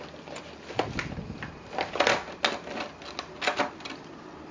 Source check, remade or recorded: recorded